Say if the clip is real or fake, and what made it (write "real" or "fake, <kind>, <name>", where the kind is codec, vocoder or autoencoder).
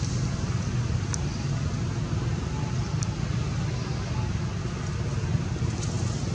real